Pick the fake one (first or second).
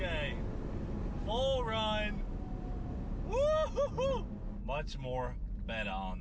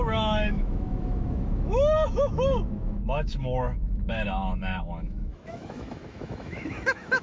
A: second